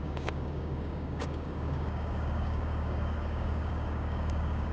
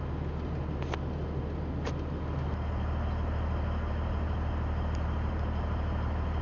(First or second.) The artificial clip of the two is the first